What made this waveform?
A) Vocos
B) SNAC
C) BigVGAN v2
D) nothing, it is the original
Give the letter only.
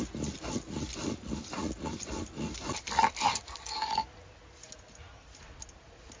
D